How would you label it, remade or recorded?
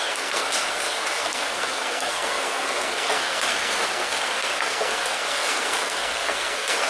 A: remade